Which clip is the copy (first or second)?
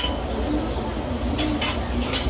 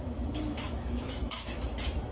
second